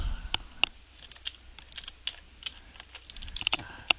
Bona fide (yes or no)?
yes